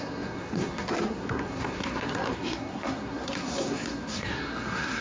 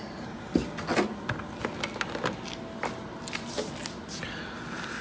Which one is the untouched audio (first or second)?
second